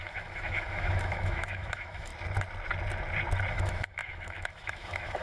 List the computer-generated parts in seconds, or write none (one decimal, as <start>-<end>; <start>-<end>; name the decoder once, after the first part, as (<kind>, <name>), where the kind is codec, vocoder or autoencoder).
0.0-2.1 (autoencoder, DAC-VAE); 3.5-5.2